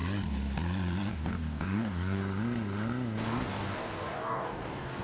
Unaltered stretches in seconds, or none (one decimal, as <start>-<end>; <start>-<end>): 0.0-1.1; 2.2-3.5